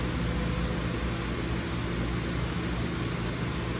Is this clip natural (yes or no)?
yes